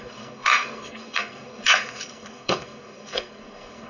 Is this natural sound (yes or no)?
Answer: no